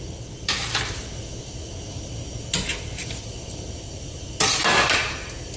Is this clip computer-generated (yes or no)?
no